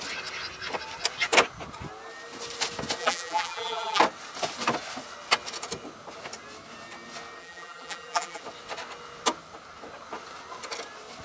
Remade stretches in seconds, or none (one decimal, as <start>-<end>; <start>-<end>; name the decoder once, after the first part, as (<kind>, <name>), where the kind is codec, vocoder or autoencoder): 3.0-4.0 (vocoder, BigVGAN v2); 7.4-8.4

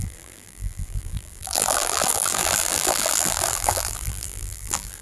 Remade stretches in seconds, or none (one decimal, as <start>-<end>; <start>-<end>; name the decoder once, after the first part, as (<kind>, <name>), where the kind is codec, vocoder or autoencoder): 0.0-5.0 (vocoder, BigVGAN v2)

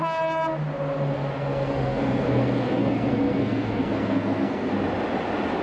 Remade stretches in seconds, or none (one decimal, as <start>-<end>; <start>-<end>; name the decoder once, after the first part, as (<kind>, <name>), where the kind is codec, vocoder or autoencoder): 1.3-4.7 (codec, SNAC)